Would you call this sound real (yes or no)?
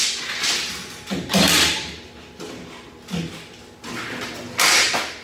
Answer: yes